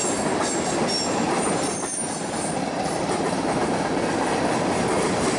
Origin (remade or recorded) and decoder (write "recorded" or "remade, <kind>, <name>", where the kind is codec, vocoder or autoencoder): recorded